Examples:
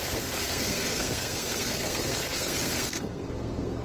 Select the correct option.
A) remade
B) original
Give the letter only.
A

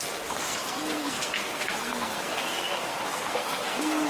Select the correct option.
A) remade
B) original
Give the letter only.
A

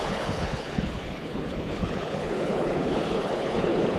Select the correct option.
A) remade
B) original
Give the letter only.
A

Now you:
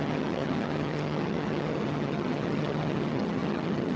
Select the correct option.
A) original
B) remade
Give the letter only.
B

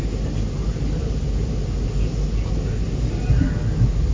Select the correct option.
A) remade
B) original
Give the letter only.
B